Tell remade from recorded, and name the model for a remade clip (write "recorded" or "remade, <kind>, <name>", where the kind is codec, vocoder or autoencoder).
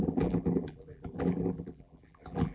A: remade, vocoder, BigVGAN v2